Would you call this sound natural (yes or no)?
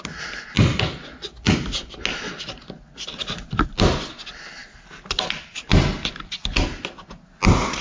yes